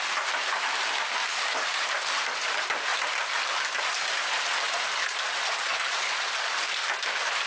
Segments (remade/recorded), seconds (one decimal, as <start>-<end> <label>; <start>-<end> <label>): 0.0-1.2 recorded; 1.2-2.2 remade; 2.2-7.5 recorded